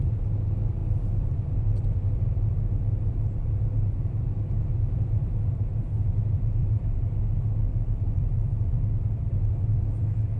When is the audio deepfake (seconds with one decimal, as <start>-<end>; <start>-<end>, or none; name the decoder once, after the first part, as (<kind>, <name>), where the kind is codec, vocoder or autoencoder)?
0.8-5.3 (vocoder, BigVGAN v2); 6.6-7.2; 7.7-9.0